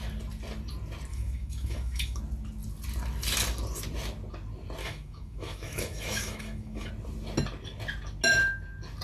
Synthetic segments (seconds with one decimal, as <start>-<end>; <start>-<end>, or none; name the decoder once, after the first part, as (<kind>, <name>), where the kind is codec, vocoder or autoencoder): 1.1-2.2 (autoencoder, DAC-VAE); 4.8-6.9

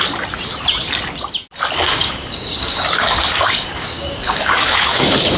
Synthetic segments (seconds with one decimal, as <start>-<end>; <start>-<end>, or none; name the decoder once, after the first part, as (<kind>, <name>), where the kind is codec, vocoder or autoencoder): 1.8-5.0 (codec, DAC)

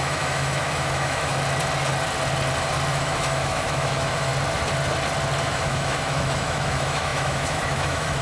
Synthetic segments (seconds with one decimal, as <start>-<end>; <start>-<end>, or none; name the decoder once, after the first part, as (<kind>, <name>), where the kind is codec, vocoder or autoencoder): 0.0-1.3 (autoencoder, DAC-VAE); 2.9-4.3; 5.4-8.2

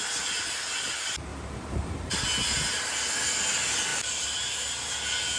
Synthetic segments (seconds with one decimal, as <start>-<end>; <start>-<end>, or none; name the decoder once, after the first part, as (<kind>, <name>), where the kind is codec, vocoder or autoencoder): 1.3-2.1 (vocoder, BigVGAN v2); 3.9-4.9

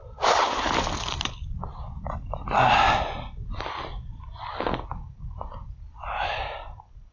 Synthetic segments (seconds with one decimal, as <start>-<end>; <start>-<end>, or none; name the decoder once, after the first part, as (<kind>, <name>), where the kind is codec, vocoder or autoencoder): 0.0-0.8 (vocoder, BigVGAN v2)